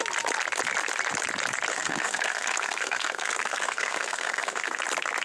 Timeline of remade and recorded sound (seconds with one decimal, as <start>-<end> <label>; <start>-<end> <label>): 0.0-1.7 recorded; 1.7-4.8 remade; 4.8-5.2 recorded